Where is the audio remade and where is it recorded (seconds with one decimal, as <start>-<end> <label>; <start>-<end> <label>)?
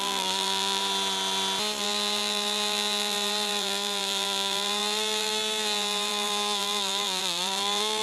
0.0-0.8 remade; 0.8-1.8 recorded; 1.8-8.0 remade